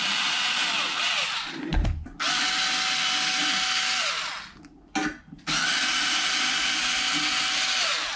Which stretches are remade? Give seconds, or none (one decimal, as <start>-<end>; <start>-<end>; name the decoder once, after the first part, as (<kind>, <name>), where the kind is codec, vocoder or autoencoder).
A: none